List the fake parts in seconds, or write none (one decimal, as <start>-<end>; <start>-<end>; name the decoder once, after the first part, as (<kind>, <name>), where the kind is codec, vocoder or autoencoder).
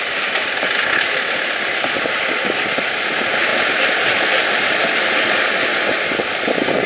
none